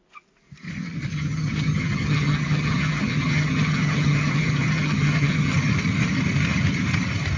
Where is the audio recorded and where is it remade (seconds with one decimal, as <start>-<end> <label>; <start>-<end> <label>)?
0.0-1.1 recorded; 1.1-5.5 remade; 5.5-7.4 recorded